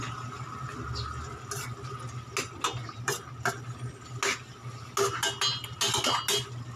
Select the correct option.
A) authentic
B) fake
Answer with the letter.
A